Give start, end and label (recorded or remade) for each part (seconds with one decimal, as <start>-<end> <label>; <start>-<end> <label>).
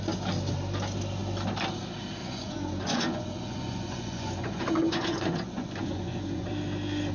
0.0-2.2 recorded; 2.2-6.5 remade; 6.5-7.1 recorded